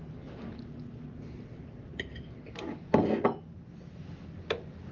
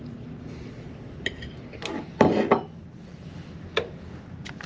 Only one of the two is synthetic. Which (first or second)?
second